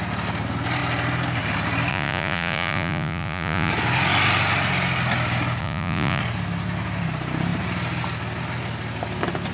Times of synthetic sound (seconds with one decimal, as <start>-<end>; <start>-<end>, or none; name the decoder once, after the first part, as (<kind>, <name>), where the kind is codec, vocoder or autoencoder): 1.9-3.7 (vocoder, Vocos); 5.6-6.2